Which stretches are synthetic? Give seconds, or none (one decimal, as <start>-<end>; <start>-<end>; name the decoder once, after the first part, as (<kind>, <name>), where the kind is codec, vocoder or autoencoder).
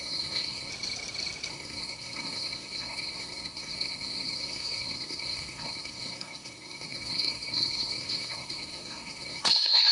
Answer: 0.0-0.7 (codec, SNAC); 1.5-9.9